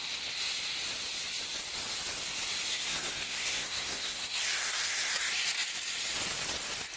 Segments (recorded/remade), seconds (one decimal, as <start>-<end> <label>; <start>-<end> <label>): 0.0-2.7 recorded; 2.7-5.1 remade; 5.1-7.0 recorded